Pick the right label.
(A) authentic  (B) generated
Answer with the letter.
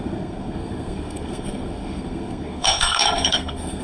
B